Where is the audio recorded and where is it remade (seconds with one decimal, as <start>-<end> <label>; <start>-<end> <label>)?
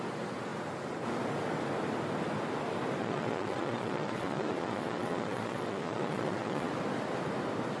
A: 0.0-3.0 recorded; 3.0-6.7 remade; 6.7-7.8 recorded